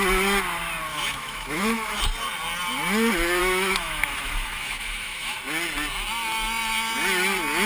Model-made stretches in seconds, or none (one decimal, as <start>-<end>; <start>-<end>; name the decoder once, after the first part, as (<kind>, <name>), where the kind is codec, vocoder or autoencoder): 0.9-2.0 (autoencoder, DAC-VAE); 3.4-5.4